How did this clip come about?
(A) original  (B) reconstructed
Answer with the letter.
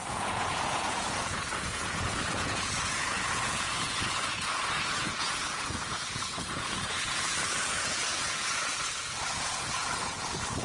B